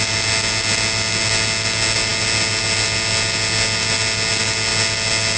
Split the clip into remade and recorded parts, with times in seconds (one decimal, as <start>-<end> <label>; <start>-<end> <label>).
0.0-5.4 recorded